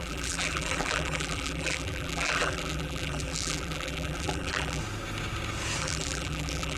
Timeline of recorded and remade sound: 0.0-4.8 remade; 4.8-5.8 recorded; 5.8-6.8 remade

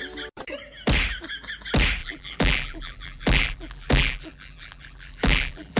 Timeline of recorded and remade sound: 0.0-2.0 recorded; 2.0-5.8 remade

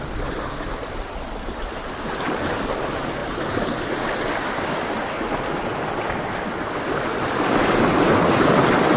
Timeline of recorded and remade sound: 0.0-9.0 recorded

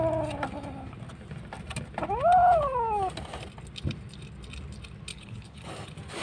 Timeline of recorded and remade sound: 0.0-5.1 recorded; 5.1-5.7 remade; 5.7-6.2 recorded